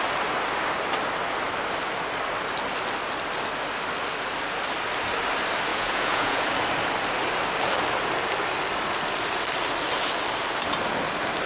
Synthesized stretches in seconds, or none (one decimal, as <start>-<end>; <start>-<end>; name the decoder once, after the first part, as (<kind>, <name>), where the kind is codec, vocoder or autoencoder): 5.7-6.5 (vocoder, Vocos)